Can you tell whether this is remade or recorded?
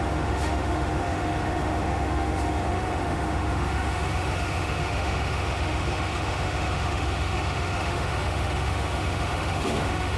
remade